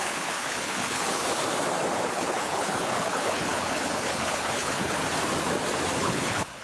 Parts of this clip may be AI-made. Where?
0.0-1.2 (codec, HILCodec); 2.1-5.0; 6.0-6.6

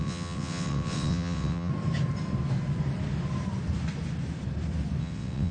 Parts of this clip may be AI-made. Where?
0.0-1.7 (vocoder, WaveNeXt); 5.0-5.5

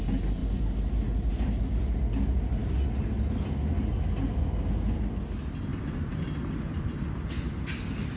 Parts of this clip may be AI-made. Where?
none

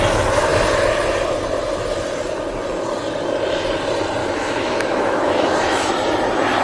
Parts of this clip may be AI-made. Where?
4.2-5.9 (autoencoder, DAC-VAE)